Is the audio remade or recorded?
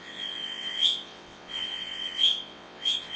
remade